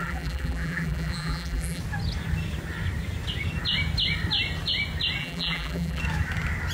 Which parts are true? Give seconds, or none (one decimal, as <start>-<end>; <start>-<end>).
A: 1.8-5.2; 6.0-6.7

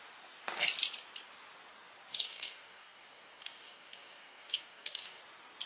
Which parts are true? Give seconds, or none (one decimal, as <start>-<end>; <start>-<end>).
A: 0.0-2.1; 5.2-5.7

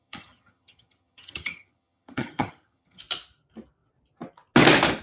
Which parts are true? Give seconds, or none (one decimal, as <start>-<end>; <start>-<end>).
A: 3.0-5.0

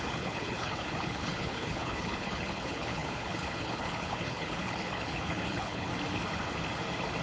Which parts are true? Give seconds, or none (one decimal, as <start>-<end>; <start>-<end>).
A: 5.9-7.2

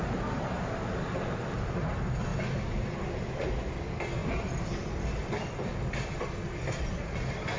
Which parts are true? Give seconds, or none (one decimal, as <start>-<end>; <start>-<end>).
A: 0.0-7.6

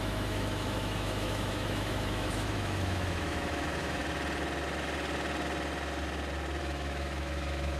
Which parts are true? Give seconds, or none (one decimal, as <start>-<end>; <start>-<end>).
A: 4.0-6.6

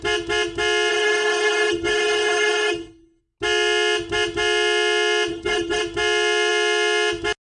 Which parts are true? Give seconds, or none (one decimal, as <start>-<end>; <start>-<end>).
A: 0.0-0.9; 3.2-5.3; 5.8-7.4

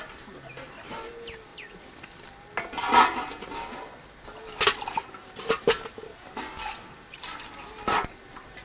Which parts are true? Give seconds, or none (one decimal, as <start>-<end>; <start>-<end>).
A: 0.0-5.2; 6.5-8.6